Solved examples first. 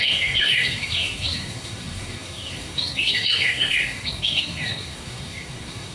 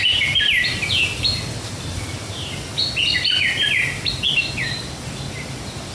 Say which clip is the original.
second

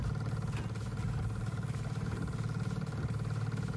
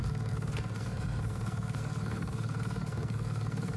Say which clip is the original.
first